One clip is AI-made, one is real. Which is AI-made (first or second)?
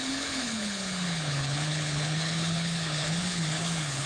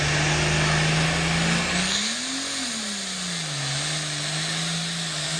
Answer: first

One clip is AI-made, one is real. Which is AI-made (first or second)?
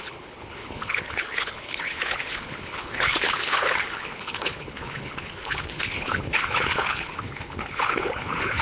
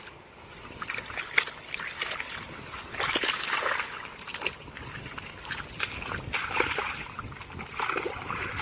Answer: first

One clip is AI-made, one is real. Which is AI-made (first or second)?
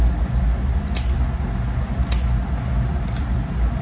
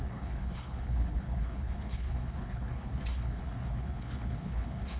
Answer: second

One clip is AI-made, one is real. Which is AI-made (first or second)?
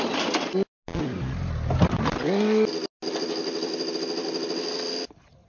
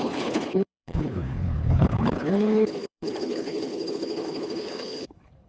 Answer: second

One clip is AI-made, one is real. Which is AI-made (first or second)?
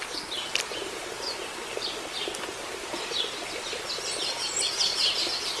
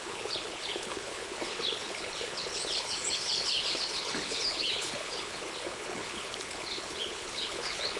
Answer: second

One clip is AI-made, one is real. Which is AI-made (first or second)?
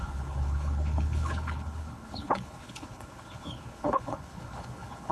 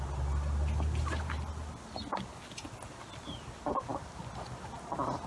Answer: first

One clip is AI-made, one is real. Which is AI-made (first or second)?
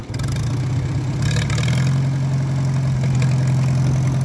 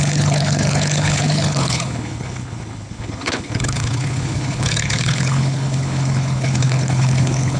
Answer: second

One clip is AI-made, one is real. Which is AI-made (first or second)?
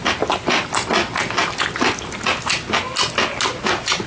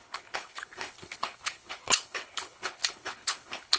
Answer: second